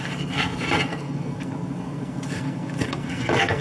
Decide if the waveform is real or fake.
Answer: fake